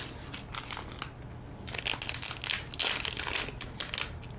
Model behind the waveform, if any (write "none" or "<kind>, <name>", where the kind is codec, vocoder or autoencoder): none